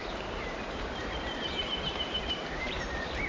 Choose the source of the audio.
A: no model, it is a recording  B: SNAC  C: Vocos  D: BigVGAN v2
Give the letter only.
D